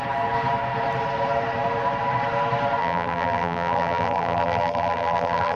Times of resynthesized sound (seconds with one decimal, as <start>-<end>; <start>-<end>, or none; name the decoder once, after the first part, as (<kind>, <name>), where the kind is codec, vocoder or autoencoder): 2.8-5.6 (vocoder, BigVGAN v2)